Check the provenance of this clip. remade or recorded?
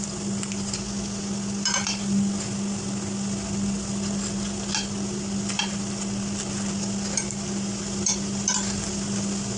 recorded